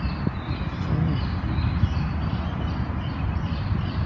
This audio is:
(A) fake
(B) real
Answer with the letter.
B